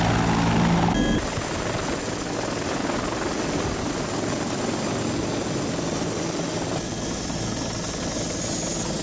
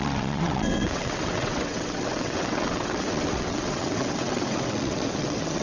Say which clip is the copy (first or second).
second